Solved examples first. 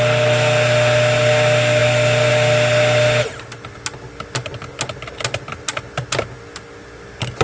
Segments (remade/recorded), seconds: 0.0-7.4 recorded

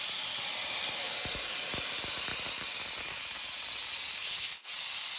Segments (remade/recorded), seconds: 0.0-4.2 recorded; 4.2-4.7 remade; 4.7-5.2 recorded

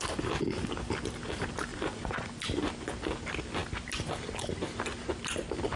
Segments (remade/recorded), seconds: 0.0-1.7 recorded; 1.7-2.3 remade; 2.3-5.8 recorded

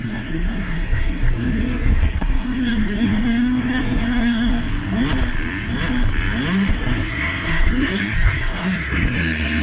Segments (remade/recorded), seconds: 0.0-4.5 remade; 4.5-6.7 recorded; 6.7-9.6 remade

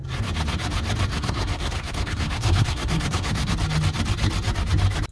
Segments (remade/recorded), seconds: 0.0-1.1 recorded; 1.1-3.5 remade; 3.5-5.1 recorded

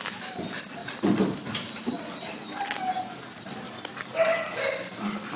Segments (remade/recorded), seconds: 0.0-5.4 recorded

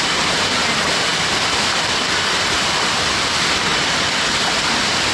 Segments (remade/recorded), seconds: 0.0-5.1 recorded

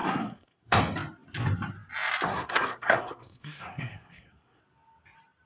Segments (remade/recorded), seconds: 0.0-0.8 remade; 0.8-2.3 recorded; 2.3-4.6 remade; 4.6-5.5 recorded